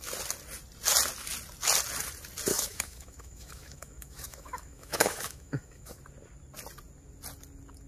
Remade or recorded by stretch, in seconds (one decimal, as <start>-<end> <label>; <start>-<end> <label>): 0.0-2.5 recorded; 2.5-6.0 remade; 6.0-7.9 recorded